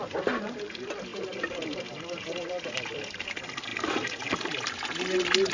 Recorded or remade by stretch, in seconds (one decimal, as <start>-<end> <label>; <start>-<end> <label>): 0.0-1.1 recorded; 1.1-2.7 remade; 2.7-3.7 recorded; 3.7-4.4 remade; 4.4-5.5 recorded